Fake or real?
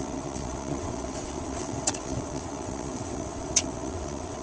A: fake